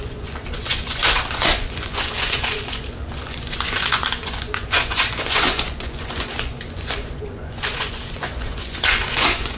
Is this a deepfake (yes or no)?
yes